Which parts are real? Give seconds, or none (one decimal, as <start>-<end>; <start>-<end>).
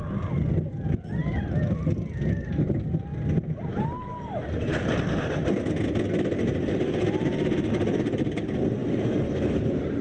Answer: 0.0-10.0